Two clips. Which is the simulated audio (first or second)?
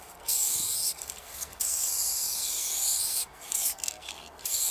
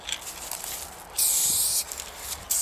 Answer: first